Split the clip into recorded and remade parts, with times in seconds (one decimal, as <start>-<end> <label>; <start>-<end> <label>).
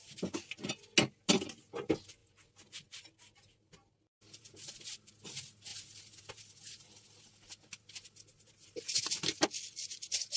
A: 0.0-10.4 recorded